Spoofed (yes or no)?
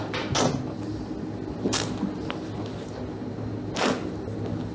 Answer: no